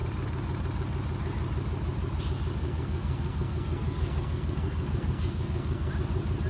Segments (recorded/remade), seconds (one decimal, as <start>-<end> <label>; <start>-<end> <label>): 0.0-2.6 recorded; 2.6-5.9 remade; 5.9-6.5 recorded